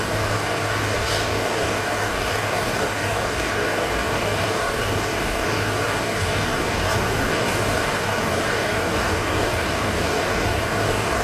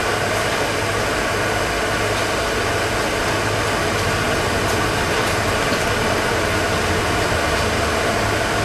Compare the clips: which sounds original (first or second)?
second